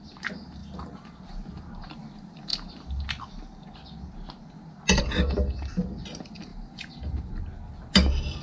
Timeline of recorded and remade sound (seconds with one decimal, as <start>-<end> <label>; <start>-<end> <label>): 0.0-0.6 recorded; 0.6-1.2 remade; 1.2-6.5 recorded; 6.5-7.3 remade; 7.3-8.4 recorded